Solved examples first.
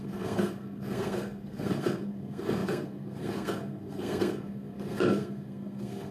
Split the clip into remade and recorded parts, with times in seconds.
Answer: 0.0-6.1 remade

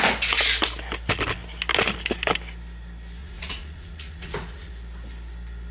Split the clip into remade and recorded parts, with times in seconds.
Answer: 0.0-3.2 recorded; 3.2-4.7 remade; 4.7-5.7 recorded

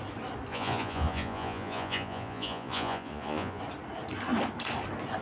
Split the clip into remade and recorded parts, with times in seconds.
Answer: 0.0-0.5 recorded; 0.5-3.6 remade; 3.6-5.2 recorded

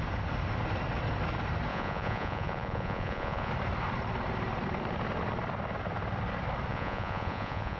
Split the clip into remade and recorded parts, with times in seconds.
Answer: 0.0-1.7 recorded; 1.7-3.5 remade; 3.5-6.7 recorded; 6.7-7.8 remade

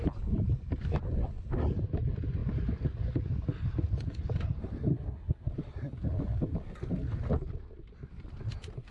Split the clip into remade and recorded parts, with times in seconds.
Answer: 0.0-4.9 recorded; 4.9-5.5 remade; 5.5-8.9 recorded